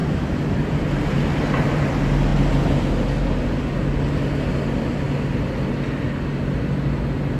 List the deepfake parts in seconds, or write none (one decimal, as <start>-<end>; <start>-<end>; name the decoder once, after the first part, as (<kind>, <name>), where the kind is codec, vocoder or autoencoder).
0.0-1.9 (vocoder, BigVGAN v2)